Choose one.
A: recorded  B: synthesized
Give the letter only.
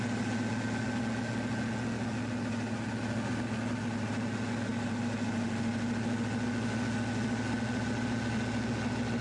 A